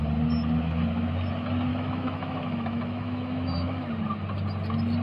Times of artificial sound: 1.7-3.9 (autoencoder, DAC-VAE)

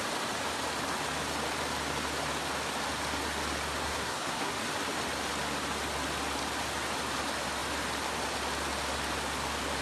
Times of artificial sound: 3.8-4.5 (codec, SNAC)